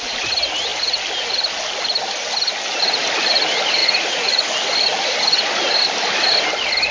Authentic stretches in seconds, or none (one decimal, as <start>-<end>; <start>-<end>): 0.0-3.8; 4.5-6.9